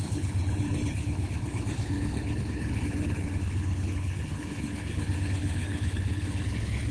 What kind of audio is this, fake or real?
fake